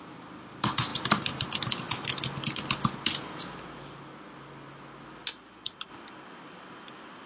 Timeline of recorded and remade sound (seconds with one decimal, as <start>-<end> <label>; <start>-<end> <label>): 0.0-7.3 recorded